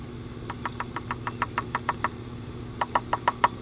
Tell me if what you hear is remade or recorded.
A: recorded